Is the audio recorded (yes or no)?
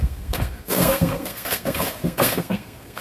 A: no